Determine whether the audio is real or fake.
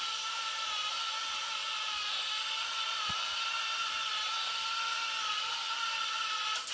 real